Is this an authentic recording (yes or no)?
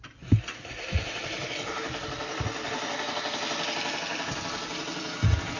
yes